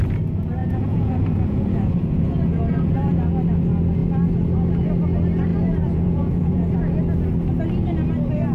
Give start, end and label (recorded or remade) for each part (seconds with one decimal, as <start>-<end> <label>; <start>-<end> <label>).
0.0-0.6 recorded; 0.6-3.3 remade; 3.3-5.5 recorded; 5.5-7.0 remade; 7.0-8.5 recorded